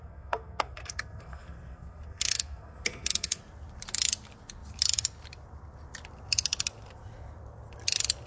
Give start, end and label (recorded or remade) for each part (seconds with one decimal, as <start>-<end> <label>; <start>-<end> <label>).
0.0-3.4 remade; 3.4-8.3 recorded